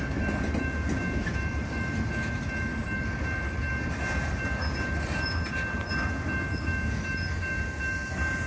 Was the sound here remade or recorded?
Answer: recorded